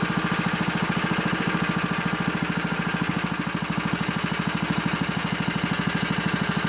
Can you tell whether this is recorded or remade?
recorded